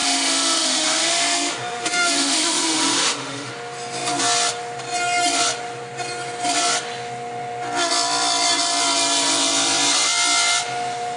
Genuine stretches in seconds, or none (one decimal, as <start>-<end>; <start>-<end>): 3.5-11.2